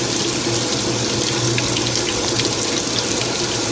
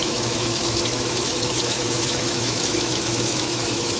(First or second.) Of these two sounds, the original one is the first